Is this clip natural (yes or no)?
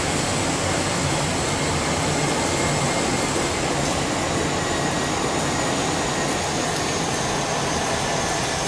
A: yes